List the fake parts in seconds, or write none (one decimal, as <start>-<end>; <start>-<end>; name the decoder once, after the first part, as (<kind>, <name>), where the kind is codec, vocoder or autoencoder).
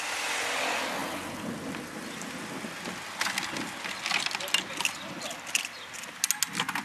none